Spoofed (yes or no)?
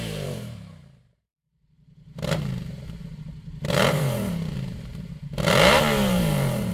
yes